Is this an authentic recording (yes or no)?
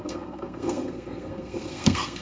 no